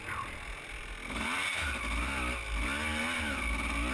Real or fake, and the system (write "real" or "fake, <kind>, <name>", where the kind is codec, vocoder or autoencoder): real